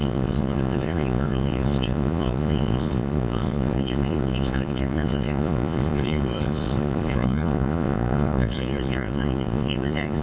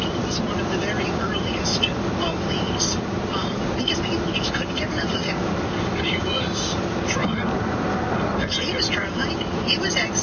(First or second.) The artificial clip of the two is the first